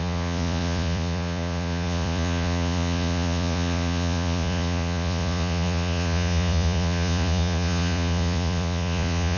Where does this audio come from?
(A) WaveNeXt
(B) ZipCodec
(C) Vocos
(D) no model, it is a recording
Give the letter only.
C